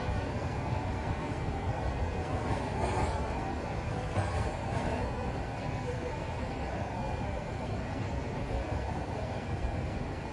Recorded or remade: remade